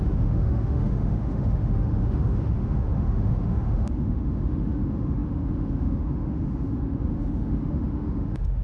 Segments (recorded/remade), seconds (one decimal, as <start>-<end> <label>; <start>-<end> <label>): 0.0-8.6 remade